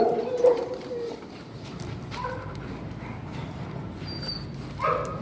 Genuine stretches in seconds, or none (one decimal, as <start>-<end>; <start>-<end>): 0.0-5.2